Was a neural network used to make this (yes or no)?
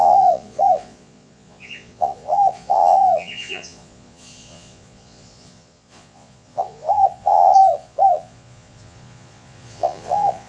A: yes